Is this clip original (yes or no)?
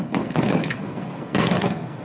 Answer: no